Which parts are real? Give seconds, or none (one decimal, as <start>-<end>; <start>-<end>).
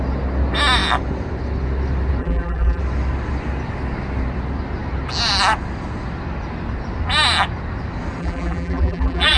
0.0-2.2; 2.8-8.2